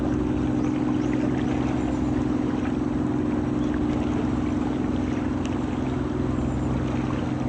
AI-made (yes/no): no